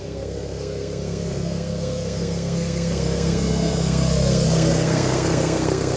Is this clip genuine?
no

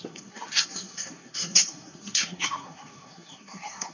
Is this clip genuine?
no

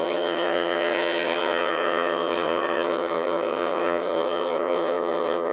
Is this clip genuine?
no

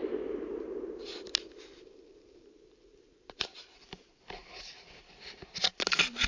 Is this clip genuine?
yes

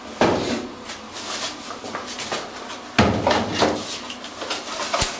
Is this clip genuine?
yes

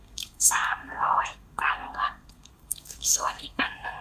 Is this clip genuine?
no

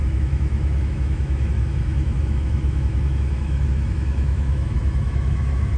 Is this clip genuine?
no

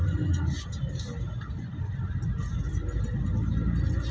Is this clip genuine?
yes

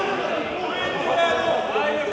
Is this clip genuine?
yes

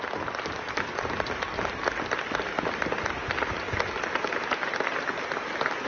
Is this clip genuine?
yes